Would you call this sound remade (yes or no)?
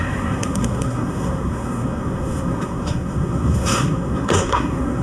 yes